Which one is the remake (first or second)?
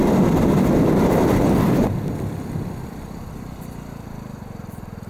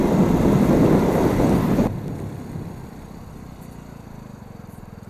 first